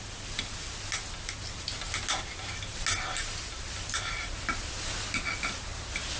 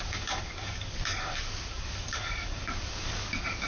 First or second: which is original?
first